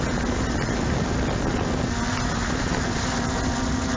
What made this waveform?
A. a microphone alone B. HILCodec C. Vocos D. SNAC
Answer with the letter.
A